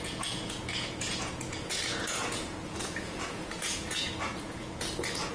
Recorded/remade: remade